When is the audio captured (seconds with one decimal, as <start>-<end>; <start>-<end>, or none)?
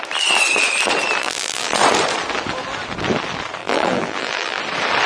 0.0-1.2; 1.8-3.6; 4.6-5.1